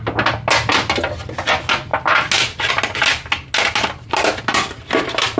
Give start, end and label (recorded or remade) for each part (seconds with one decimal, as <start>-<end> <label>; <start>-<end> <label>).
0.0-5.4 recorded